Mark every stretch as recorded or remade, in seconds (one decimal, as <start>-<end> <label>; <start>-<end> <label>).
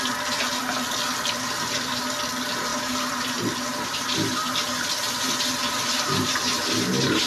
0.0-7.3 recorded